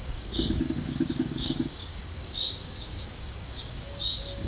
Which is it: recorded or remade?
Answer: remade